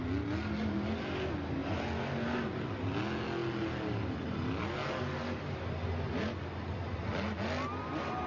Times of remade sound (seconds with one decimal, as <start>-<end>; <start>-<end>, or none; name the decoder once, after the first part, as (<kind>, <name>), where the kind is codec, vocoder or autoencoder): none